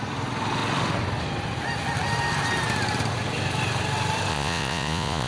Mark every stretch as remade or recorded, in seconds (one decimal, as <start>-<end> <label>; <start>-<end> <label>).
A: 0.0-4.3 recorded; 4.3-5.3 remade